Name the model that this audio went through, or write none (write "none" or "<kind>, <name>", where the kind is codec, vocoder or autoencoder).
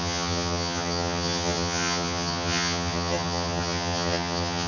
vocoder, HiFi-GAN